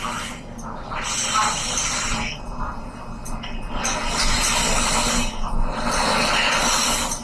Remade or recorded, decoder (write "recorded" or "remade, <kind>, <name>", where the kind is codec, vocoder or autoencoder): recorded